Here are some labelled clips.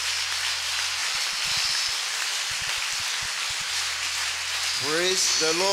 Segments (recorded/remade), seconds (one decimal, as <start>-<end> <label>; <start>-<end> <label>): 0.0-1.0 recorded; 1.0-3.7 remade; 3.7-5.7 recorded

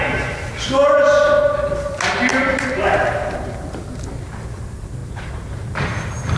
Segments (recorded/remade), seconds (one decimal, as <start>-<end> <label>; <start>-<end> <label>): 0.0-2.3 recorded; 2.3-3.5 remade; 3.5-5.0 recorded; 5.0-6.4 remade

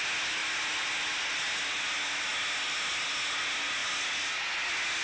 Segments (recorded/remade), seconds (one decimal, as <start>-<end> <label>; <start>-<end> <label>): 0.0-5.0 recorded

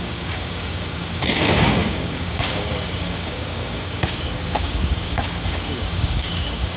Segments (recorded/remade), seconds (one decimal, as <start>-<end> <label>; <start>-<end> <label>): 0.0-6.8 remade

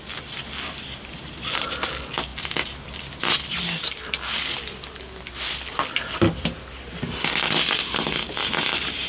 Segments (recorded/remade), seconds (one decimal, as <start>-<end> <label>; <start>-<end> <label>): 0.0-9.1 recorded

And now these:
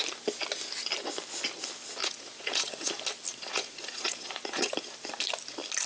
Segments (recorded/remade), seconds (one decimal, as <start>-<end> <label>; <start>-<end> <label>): 0.0-2.0 recorded; 2.0-2.9 remade; 2.9-3.3 recorded; 3.3-4.7 remade; 4.7-5.9 recorded